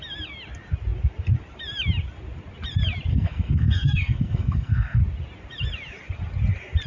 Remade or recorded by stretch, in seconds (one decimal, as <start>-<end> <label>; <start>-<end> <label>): 0.0-3.1 recorded; 3.1-5.0 remade; 5.0-6.9 recorded